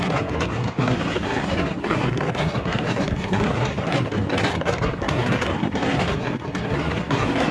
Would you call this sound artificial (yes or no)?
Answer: yes